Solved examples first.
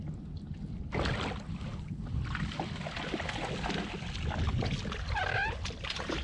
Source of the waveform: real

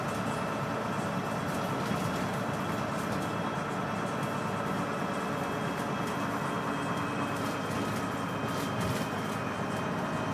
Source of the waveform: real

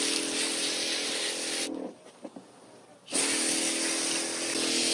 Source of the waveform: real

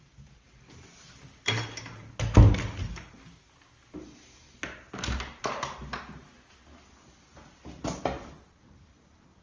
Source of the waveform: real